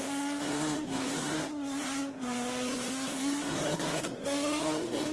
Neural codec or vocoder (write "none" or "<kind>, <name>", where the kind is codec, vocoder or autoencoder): codec, SNAC